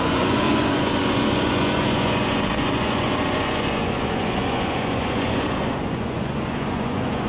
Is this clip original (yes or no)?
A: no